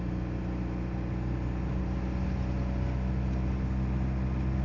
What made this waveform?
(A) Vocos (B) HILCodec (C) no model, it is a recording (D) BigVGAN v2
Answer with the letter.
C